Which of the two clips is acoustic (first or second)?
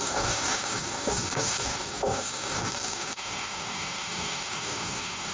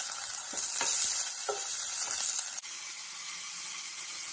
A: second